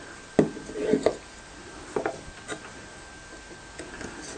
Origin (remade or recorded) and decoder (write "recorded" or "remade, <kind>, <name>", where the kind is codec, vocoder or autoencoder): recorded